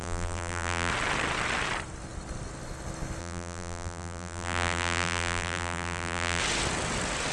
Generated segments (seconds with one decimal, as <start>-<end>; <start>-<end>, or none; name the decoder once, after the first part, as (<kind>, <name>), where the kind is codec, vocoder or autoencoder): 0.0-0.9 (vocoder, BigVGAN v2); 3.2-6.4